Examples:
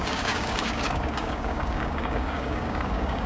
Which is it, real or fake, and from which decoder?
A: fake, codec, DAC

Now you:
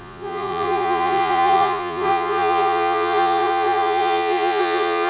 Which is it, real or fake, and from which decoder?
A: fake, vocoder, Vocos